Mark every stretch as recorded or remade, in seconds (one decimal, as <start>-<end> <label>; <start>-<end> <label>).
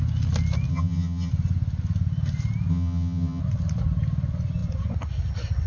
0.0-0.7 recorded; 0.7-1.3 remade; 1.3-2.7 recorded; 2.7-3.4 remade; 3.4-5.7 recorded